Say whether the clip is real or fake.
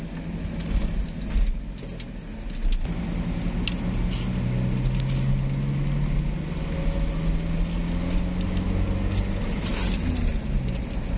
real